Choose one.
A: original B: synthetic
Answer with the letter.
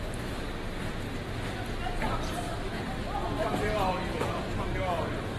A